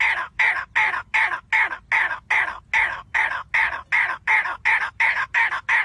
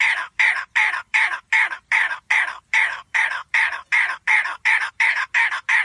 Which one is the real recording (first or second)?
first